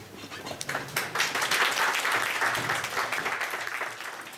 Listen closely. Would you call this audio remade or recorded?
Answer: recorded